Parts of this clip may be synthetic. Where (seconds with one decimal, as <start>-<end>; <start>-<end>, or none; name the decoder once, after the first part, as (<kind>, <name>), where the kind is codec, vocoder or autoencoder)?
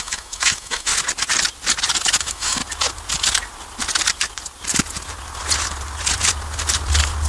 0.0-0.9 (autoencoder, DAC-VAE); 2.2-2.6